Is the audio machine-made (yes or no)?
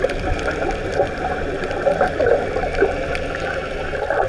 no